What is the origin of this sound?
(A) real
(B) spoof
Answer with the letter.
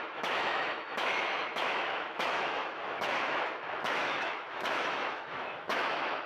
B